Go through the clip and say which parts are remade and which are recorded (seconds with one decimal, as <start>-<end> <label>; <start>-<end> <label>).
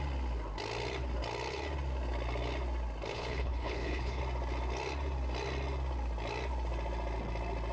0.0-3.1 recorded; 3.1-4.2 remade; 4.2-7.7 recorded